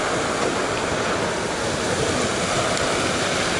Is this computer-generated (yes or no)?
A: no